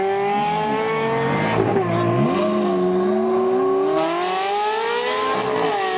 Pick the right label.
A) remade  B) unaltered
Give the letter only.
B